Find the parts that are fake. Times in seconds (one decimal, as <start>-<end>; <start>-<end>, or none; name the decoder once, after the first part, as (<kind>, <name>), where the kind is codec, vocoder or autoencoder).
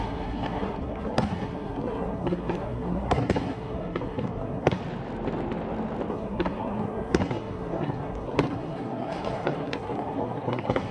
0.0-4.8 (codec, SNAC); 6.1-10.9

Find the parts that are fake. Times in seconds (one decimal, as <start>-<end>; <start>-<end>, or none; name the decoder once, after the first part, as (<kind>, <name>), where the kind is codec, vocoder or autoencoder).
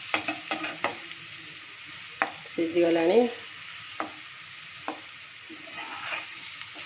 5.9-6.5 (vocoder, Vocos)